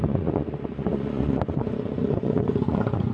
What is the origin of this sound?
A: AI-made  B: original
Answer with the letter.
A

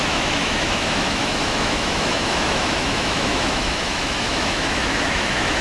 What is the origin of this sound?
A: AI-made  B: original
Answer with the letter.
A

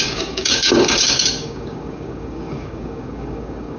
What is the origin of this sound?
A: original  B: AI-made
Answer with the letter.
B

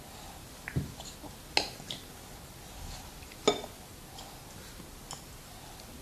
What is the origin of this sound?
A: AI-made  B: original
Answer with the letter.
B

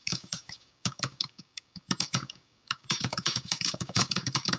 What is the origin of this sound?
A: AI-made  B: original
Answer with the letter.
A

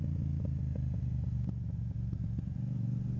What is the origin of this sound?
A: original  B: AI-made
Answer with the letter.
A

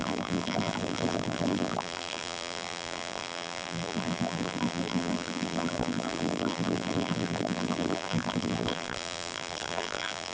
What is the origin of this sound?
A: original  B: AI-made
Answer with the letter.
B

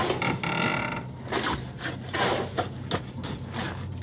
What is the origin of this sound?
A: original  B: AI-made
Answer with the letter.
A